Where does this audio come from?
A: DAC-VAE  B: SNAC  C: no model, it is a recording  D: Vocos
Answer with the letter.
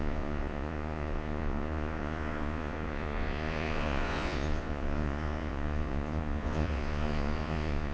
D